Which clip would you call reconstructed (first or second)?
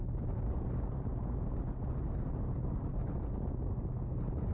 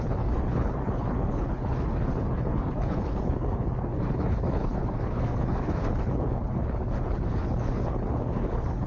second